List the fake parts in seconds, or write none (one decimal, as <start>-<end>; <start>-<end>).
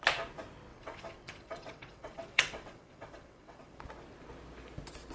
0.7-3.8